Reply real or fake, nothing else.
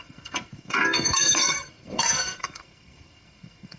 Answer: fake